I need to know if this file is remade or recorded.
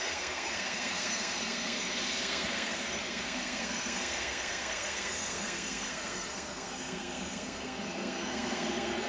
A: remade